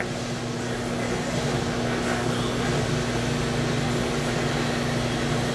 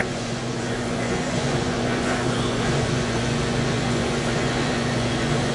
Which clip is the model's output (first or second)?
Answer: second